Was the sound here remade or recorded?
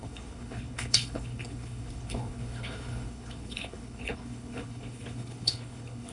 remade